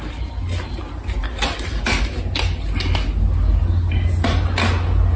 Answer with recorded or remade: recorded